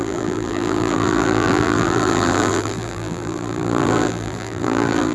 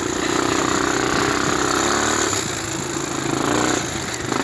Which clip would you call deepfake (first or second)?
first